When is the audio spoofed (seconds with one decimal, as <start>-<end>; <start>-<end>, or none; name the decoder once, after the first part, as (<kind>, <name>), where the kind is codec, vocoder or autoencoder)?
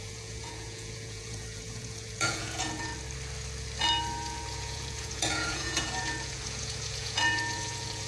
0.0-2.9 (vocoder, Vocos); 4.0-8.1